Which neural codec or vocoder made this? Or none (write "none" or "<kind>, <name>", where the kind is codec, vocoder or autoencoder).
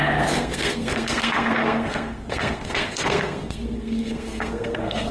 codec, SNAC